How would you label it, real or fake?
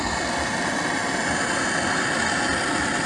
real